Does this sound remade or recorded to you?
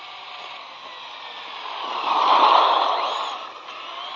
recorded